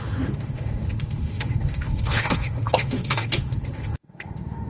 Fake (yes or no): yes